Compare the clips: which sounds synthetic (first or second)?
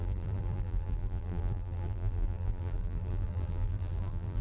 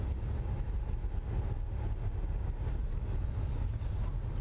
first